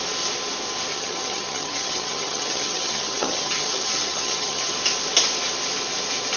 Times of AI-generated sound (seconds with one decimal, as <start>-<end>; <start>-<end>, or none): 0.9-4.7

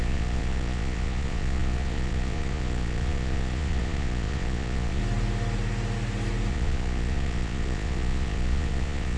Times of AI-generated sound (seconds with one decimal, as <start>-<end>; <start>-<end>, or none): 0.0-5.0; 6.5-9.2

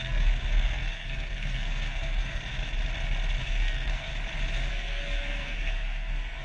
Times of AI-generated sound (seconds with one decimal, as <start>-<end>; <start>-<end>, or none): 0.0-2.4; 3.4-4.1; 4.7-6.4

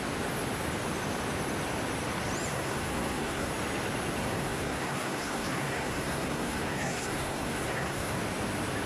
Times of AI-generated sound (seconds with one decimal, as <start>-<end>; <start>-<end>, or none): 2.5-3.5; 4.2-8.2

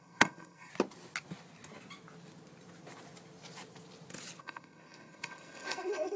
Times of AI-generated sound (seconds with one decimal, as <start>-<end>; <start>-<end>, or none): 0.0-0.7; 4.4-6.2

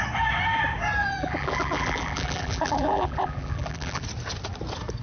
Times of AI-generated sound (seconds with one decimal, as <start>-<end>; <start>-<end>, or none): 1.2-4.0

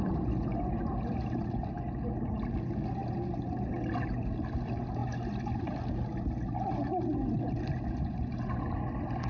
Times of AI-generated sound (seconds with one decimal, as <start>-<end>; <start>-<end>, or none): none

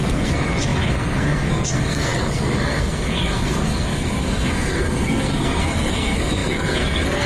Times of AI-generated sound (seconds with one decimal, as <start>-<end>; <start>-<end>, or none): 0.0-7.3